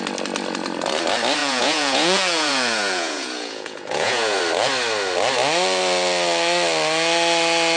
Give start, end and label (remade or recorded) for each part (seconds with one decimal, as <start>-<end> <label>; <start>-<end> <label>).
0.0-1.4 recorded; 1.4-4.4 remade; 4.4-7.8 recorded